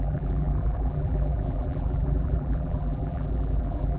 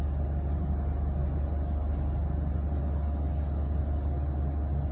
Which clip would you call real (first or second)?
second